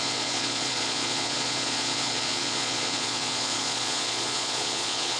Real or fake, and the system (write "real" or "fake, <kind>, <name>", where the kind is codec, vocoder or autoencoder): fake, vocoder, Vocos